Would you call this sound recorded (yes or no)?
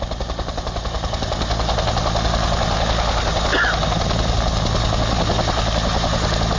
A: yes